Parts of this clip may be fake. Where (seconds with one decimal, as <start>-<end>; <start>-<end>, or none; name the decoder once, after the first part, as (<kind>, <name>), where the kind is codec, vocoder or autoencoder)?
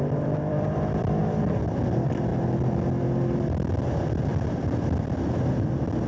0.0-2.3 (vocoder, BigVGAN v2); 3.9-6.1